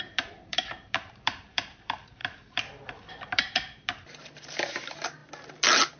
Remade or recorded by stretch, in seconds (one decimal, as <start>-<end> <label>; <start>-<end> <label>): 0.0-5.2 remade; 5.2-6.0 recorded